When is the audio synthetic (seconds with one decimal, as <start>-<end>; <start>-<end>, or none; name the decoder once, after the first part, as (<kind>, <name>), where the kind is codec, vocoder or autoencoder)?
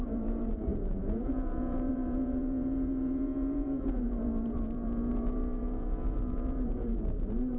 0.0-7.6 (vocoder, Vocos)